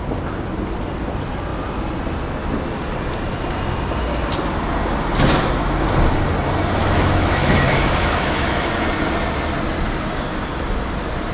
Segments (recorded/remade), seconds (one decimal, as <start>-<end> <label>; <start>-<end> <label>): 0.0-6.8 recorded; 6.8-8.7 remade; 8.7-11.3 recorded